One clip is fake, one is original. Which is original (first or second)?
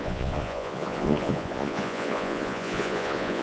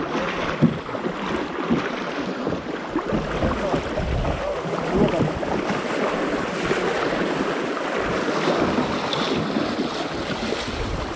second